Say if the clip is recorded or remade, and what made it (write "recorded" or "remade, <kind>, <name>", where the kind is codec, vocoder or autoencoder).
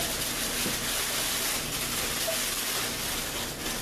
recorded